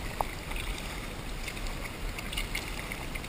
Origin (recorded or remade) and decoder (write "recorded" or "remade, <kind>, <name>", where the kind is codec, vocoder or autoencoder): recorded